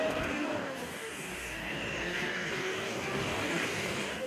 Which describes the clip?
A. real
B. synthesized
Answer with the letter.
B